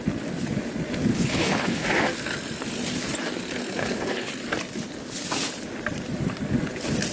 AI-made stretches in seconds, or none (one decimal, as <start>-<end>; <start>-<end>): 1.1-1.9; 3.8-4.3